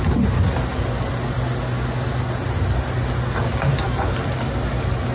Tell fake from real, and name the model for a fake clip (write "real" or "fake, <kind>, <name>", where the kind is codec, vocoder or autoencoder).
real